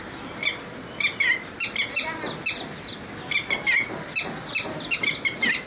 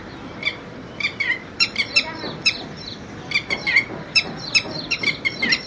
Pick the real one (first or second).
first